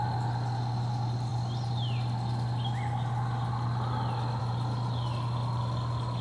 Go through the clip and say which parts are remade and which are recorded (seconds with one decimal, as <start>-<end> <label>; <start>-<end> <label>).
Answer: 0.0-1.3 remade; 1.3-4.4 recorded; 4.4-6.2 remade